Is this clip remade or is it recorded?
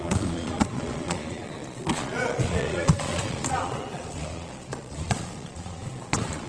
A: remade